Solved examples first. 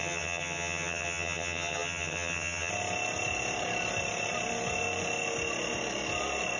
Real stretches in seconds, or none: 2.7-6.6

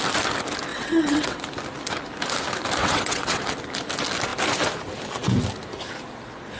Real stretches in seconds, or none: 0.0-0.7; 1.4-2.8; 3.4-6.6

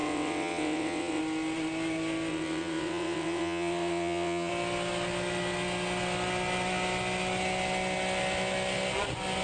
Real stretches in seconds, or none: 1.2-2.3; 4.5-9.4

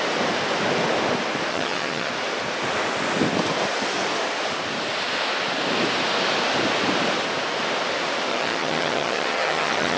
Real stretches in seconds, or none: 0.0-1.5; 2.1-8.3